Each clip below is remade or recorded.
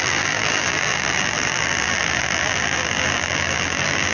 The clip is remade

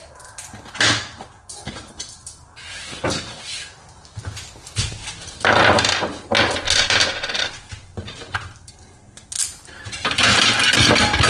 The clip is recorded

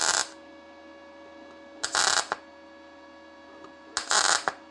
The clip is recorded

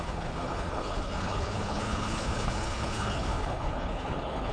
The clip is remade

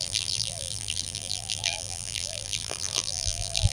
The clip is remade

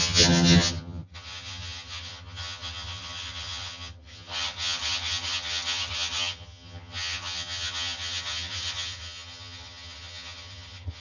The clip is remade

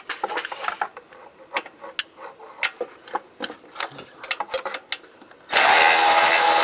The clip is recorded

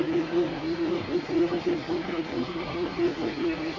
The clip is remade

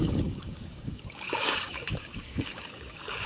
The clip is remade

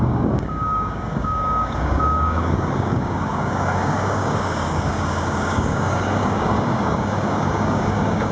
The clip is remade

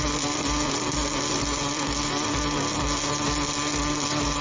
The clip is recorded